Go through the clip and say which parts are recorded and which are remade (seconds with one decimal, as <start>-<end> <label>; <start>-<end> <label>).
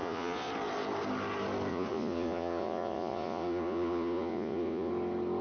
0.0-0.5 remade; 0.5-1.7 recorded; 1.7-4.9 remade; 4.9-5.4 recorded